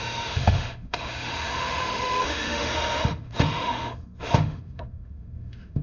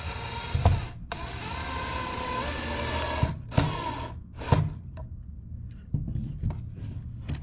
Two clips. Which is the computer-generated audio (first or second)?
first